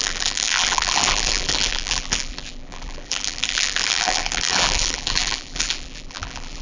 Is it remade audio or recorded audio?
remade